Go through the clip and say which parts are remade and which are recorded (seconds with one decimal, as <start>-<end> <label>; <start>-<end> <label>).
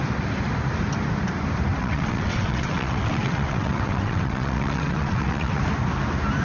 0.0-1.8 recorded; 1.8-5.6 remade; 5.6-6.4 recorded